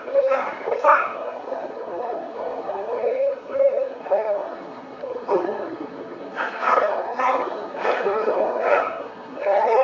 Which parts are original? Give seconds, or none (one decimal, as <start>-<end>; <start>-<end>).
none